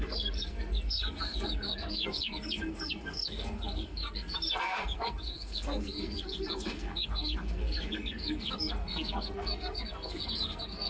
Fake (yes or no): yes